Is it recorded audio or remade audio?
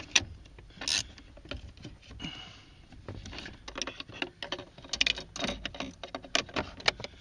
recorded